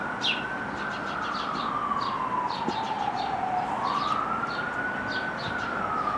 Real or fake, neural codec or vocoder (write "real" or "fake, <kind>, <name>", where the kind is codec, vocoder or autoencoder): real